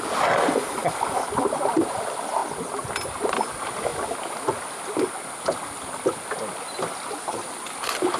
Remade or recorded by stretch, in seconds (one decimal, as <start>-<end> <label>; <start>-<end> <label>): 0.0-8.2 recorded